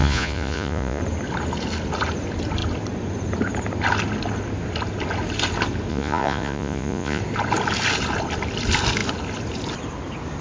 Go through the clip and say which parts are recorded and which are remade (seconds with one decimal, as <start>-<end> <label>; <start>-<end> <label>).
0.0-1.0 remade; 1.0-5.9 recorded; 5.9-7.2 remade; 7.2-10.4 recorded